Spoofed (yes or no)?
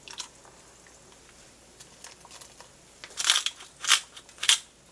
no